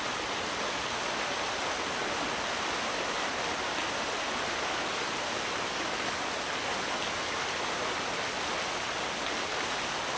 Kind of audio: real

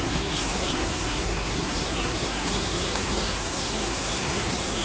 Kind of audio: fake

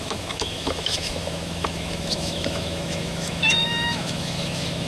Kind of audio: fake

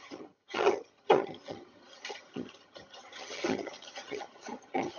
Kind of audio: fake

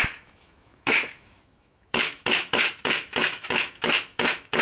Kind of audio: fake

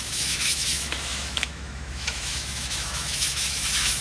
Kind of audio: fake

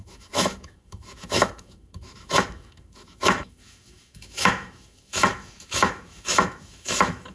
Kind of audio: fake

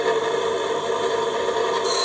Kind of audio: real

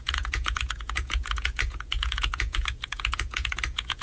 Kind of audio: fake